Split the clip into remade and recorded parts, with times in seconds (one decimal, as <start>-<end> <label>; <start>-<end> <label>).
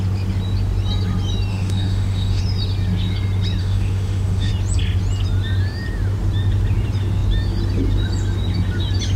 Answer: 0.0-1.5 recorded; 1.5-2.4 remade; 2.4-3.6 recorded; 3.6-4.5 remade; 4.5-9.2 recorded